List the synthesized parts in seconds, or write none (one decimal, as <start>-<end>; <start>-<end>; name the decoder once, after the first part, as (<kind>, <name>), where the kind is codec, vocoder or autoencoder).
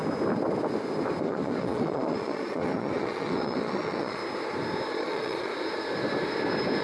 1.2-4.2 (vocoder, Vocos); 4.9-5.5